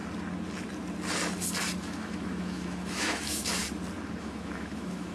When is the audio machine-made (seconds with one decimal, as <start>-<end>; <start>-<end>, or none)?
1.8-3.6; 4.2-5.1